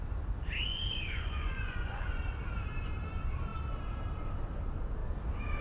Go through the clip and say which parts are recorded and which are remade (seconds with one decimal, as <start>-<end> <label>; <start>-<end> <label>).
0.0-0.7 recorded; 0.7-2.3 remade; 2.3-5.6 recorded